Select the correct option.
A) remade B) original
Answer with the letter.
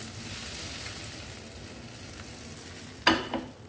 B